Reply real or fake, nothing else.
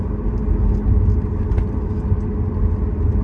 real